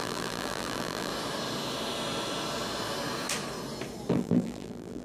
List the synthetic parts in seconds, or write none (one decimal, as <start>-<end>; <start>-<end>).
0.0-1.1; 4.1-5.0